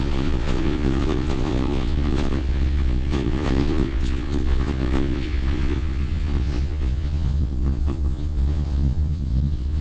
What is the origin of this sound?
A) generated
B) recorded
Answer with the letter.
A